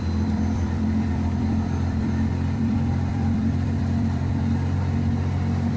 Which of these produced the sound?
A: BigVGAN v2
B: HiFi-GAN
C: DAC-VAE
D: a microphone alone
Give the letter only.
A